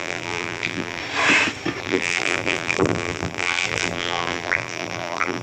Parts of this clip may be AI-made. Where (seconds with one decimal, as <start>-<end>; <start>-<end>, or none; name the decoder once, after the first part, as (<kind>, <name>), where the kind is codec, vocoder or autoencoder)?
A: 0.0-1.0 (vocoder, BigVGAN v2); 1.8-5.4